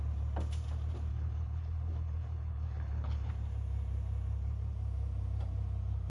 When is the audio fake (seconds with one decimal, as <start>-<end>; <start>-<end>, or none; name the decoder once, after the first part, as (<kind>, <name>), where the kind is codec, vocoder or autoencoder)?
1.1-3.3 (codec, HILCodec)